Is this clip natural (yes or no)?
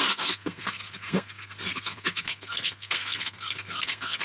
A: no